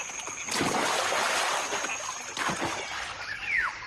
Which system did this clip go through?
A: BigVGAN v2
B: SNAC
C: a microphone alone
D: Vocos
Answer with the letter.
C